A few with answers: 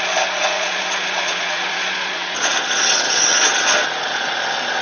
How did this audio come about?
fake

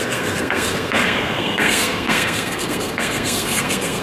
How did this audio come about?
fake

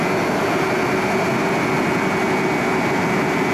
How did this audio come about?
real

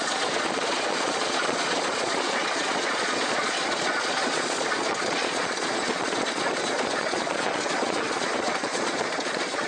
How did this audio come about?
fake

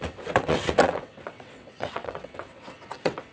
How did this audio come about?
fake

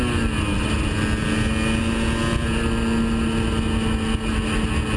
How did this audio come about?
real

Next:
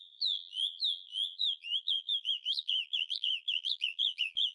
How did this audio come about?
fake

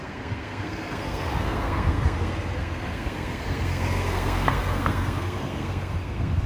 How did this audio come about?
fake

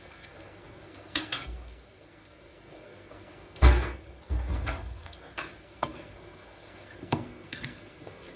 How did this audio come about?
fake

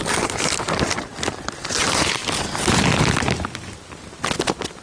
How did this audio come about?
real